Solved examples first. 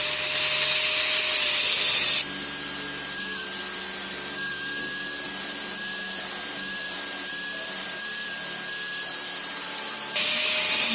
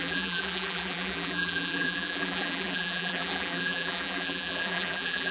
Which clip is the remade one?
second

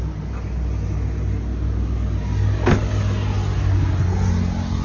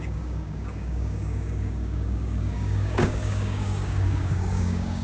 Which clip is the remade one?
second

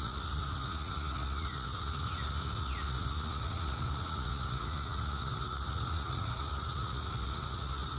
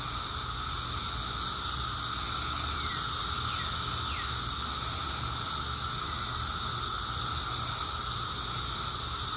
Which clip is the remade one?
first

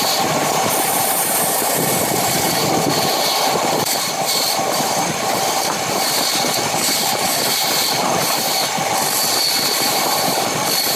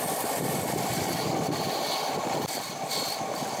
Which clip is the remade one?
first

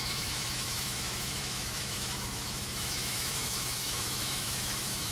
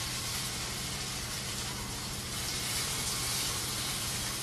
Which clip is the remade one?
first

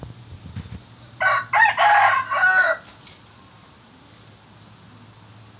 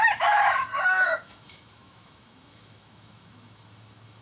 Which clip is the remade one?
second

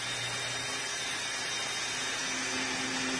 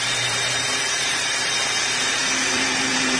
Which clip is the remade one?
second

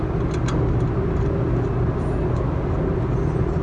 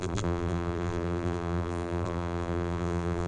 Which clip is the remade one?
second